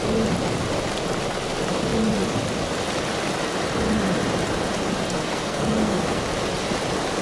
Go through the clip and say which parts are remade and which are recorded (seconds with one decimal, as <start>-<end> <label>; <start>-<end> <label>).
0.0-5.2 recorded; 5.2-6.2 remade; 6.2-7.2 recorded